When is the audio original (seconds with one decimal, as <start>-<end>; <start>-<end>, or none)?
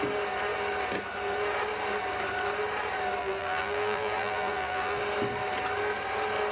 0.0-3.2; 5.0-6.5